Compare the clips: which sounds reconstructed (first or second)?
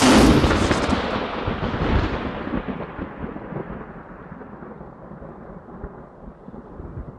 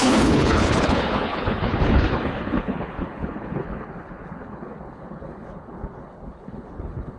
second